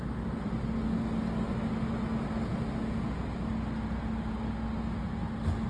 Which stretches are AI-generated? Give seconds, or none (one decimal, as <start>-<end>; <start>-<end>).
none